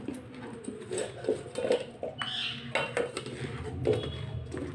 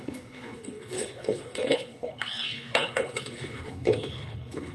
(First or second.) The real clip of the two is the first